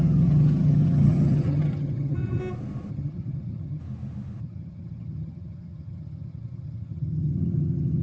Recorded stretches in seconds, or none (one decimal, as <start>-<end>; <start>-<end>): 2.4-2.9; 3.8-4.4

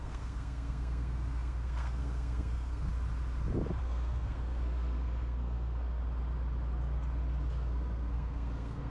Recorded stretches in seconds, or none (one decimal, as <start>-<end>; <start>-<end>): 2.9-3.8; 6.0-7.5

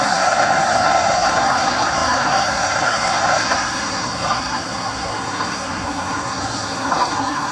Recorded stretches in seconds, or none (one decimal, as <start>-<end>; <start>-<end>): none

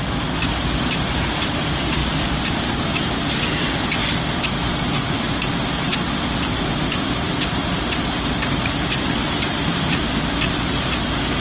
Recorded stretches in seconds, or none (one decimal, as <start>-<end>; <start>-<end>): 4.0-5.2; 5.9-6.4